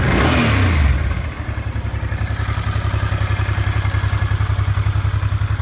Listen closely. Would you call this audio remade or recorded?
recorded